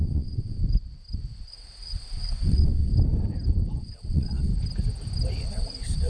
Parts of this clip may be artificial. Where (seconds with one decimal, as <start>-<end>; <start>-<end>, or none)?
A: 0.0-0.6; 1.5-2.9; 3.8-4.5; 5.5-6.1